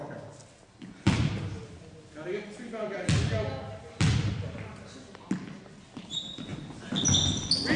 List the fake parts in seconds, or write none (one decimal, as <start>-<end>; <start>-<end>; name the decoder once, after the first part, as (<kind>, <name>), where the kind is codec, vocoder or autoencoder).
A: none